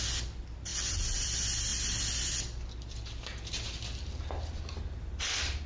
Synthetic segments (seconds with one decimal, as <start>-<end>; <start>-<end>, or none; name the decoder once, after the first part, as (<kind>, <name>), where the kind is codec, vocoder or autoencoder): 0.0-0.7 (vocoder, BigVGAN v2); 1.2-1.7; 4.8-5.7